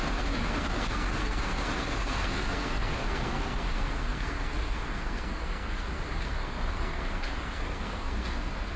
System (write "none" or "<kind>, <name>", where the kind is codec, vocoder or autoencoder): codec, SNAC